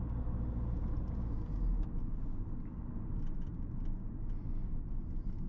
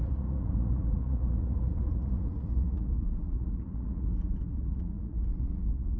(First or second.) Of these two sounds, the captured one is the first